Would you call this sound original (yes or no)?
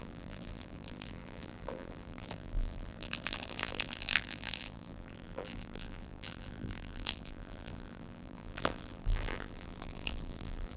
no